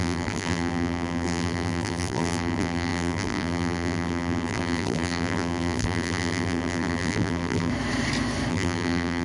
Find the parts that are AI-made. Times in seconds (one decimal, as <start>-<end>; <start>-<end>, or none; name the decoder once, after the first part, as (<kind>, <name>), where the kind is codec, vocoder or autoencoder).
0.0-7.7 (vocoder, BigVGAN v2); 8.5-9.2